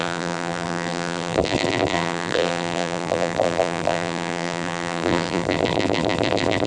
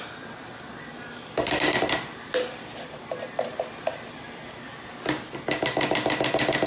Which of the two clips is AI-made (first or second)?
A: first